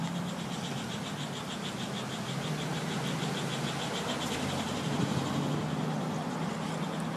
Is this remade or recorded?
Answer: recorded